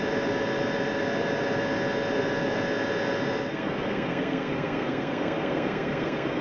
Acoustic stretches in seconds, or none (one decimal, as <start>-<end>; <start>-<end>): 0.0-3.5